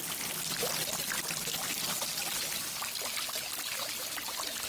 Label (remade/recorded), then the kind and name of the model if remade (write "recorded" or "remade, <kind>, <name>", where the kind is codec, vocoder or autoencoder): recorded